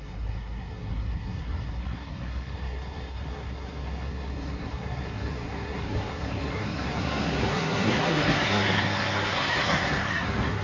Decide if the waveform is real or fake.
fake